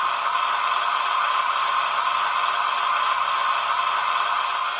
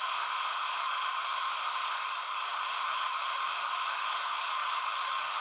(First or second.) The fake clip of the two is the second